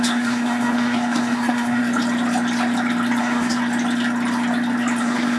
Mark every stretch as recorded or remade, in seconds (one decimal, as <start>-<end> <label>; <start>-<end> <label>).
0.0-1.8 remade; 1.8-3.2 recorded; 3.2-3.6 remade; 3.6-5.0 recorded; 5.0-5.4 remade